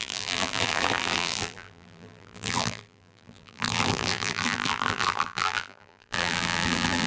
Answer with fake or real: fake